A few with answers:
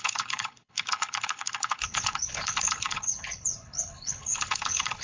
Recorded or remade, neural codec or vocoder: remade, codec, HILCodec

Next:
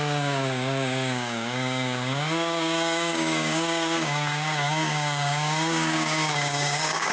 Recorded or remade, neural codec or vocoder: remade, codec, DAC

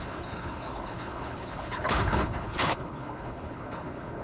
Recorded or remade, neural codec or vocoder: remade, codec, HILCodec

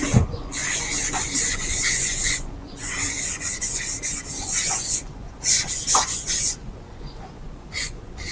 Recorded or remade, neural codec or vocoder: remade, vocoder, Vocos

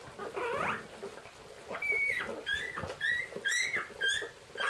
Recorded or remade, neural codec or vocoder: recorded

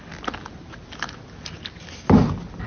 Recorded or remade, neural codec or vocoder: recorded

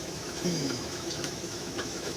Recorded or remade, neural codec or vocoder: remade, autoencoder, DAC-VAE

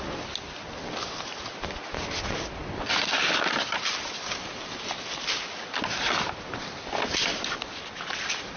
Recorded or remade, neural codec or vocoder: recorded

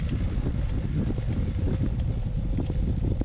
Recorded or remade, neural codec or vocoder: recorded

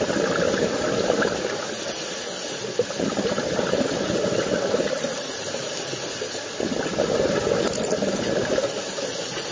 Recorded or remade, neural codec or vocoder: recorded